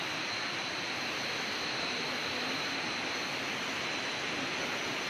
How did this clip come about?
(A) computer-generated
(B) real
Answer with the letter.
B